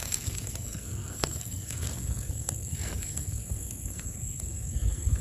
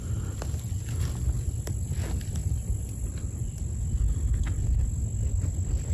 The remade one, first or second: first